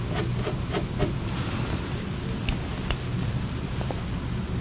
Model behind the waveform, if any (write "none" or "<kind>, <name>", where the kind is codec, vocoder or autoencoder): none